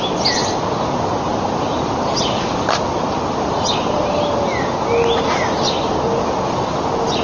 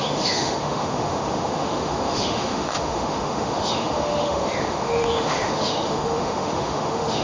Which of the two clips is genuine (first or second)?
first